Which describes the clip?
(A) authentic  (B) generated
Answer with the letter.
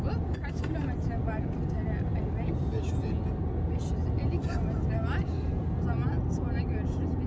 A